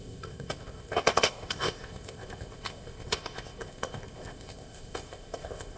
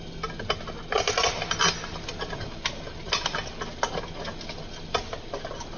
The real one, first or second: second